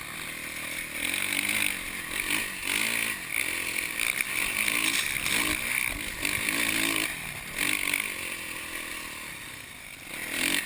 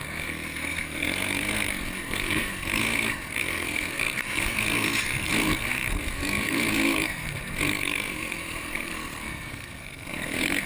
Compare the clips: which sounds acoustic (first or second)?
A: first